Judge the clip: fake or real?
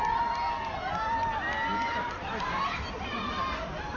real